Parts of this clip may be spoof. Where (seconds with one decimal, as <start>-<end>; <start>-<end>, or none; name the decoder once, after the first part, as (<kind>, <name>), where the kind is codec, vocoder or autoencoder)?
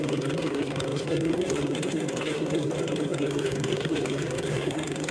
0.0-5.1 (codec, SNAC)